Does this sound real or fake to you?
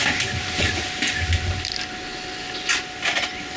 real